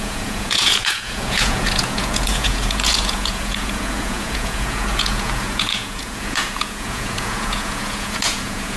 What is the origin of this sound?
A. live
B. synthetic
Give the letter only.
B